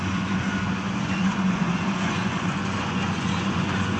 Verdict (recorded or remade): remade